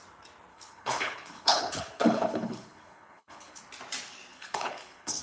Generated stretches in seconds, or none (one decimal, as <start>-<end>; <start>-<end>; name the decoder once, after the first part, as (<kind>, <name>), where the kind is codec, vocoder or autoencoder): 0.5-3.6 (codec, HILCodec); 4.3-5.2